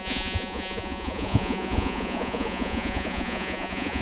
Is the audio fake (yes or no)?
yes